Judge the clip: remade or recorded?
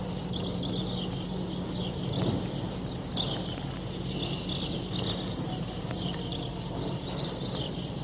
recorded